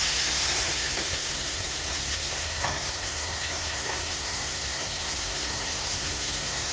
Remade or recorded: remade